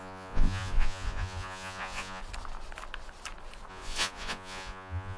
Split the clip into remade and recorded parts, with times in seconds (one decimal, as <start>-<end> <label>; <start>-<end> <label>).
0.0-2.2 remade; 2.2-3.7 recorded; 3.7-5.2 remade